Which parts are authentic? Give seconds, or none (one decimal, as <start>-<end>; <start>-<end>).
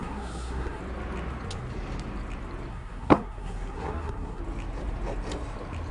0.8-2.7; 4.4-5.9